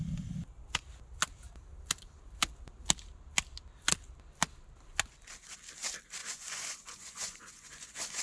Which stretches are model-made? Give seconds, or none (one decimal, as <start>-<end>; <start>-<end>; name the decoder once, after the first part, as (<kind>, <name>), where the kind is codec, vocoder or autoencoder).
6.2-8.2 (vocoder, Vocos)